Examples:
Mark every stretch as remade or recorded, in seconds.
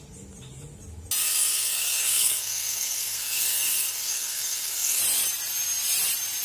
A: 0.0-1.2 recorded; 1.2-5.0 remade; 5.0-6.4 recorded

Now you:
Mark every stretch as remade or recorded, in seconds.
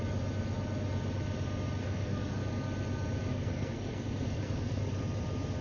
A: 0.0-1.8 recorded; 1.8-2.4 remade; 2.4-3.3 recorded; 3.3-4.8 remade; 4.8-5.6 recorded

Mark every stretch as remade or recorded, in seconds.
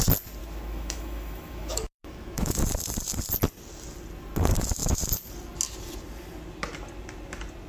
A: 0.0-0.4 recorded; 0.4-2.6 remade; 2.6-7.7 recorded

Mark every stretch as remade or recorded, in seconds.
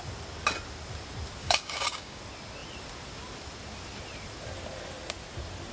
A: 0.0-1.4 recorded; 1.4-2.2 remade; 2.2-5.7 recorded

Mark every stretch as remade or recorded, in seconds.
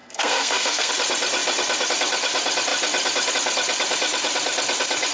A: 0.0-0.9 remade; 0.9-5.1 recorded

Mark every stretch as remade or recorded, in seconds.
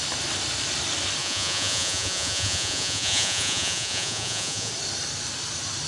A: 0.0-1.2 recorded; 1.2-4.7 remade; 4.7-5.9 recorded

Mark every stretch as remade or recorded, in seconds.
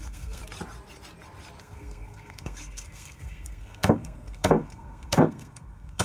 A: 0.0-0.4 remade; 0.4-1.6 recorded; 1.6-6.0 remade